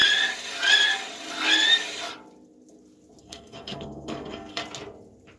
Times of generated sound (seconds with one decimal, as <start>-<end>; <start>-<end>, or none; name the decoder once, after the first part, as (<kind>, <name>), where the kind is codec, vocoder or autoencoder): 3.2-4.6 (codec, SNAC)